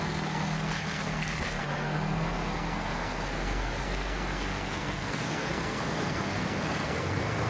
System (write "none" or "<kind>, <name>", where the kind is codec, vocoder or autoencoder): codec, SNAC